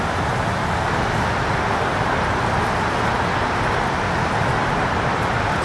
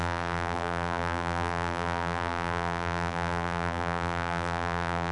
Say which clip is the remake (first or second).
second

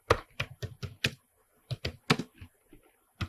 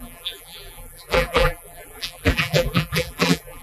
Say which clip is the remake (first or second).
second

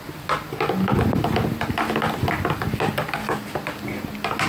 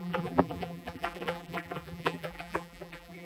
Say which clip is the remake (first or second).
second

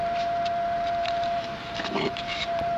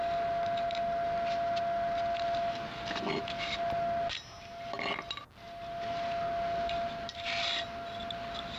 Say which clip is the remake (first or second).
first